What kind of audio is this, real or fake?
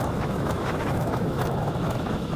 fake